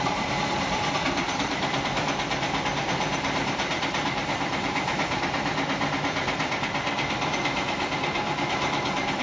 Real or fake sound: fake